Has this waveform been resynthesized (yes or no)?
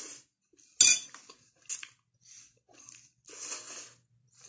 no